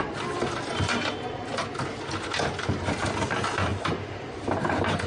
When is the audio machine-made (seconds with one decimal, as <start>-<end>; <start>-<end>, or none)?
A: none